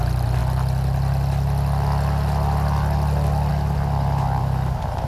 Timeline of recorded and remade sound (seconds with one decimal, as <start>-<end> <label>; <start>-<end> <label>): 0.0-0.4 remade; 0.4-3.5 recorded; 3.5-5.1 remade